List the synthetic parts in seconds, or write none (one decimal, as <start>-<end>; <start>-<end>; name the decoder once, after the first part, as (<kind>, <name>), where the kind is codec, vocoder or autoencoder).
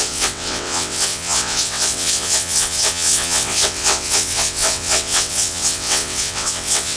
0.0-7.0 (vocoder, WaveNeXt)